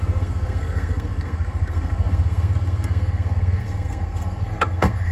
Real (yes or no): no